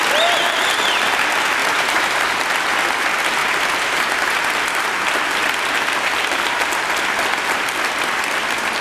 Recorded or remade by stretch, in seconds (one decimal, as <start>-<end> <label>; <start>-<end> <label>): 0.0-1.6 recorded; 1.6-2.2 remade; 2.2-3.4 recorded; 3.4-4.4 remade; 4.4-8.8 recorded